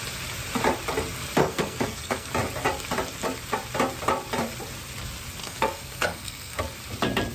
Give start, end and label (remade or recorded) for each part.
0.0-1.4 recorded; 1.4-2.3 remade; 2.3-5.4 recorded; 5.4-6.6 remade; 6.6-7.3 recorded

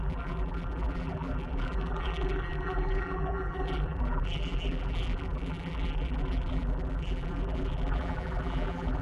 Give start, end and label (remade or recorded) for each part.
0.0-9.0 remade

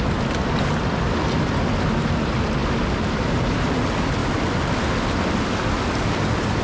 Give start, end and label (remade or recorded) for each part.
0.0-6.6 recorded

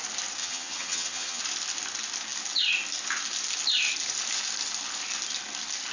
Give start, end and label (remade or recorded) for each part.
0.0-0.4 recorded; 0.4-1.4 remade; 1.4-5.9 recorded

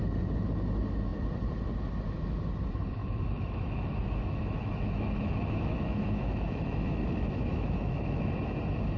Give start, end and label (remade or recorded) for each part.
0.0-3.0 recorded; 3.0-8.2 remade; 8.2-9.0 recorded

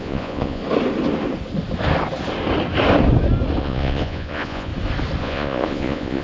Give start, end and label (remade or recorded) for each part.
0.0-0.6 remade; 0.6-3.6 recorded; 3.6-4.7 remade; 4.7-5.2 recorded; 5.2-6.2 remade

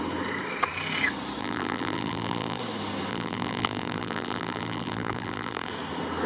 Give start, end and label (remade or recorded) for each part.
0.0-1.4 recorded; 1.4-2.6 remade; 2.6-3.1 recorded; 3.1-5.7 remade; 5.7-6.3 recorded